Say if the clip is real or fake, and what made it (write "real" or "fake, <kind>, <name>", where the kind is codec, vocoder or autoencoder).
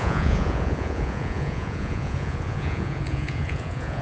fake, vocoder, Vocos